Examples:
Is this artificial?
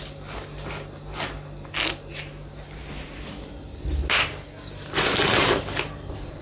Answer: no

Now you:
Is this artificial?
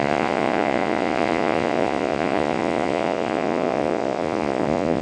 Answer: yes